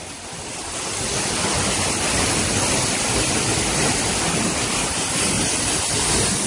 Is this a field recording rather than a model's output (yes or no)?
yes